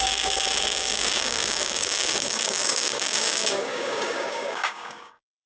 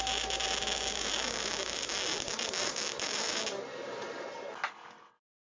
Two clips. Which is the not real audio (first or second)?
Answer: first